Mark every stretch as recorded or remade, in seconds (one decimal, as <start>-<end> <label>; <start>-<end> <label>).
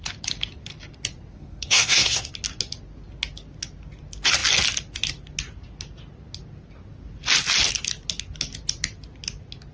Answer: 0.0-1.3 recorded; 1.3-2.3 remade; 2.3-9.7 recorded